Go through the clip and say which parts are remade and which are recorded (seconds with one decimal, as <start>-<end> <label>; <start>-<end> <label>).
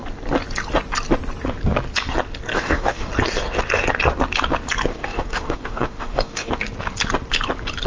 0.0-2.5 recorded; 2.5-3.1 remade; 3.1-4.9 recorded; 4.9-6.5 remade; 6.5-7.9 recorded